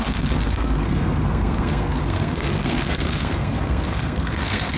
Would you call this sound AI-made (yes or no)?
yes